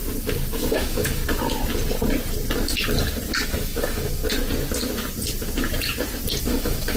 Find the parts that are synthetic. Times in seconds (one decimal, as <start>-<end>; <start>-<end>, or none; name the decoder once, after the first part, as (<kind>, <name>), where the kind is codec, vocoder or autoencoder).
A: 0.7-1.2 (autoencoder, DAC-VAE); 3.5-4.2; 6.4-7.0